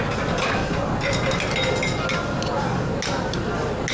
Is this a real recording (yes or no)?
yes